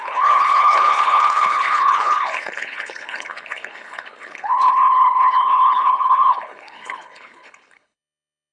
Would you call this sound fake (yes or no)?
yes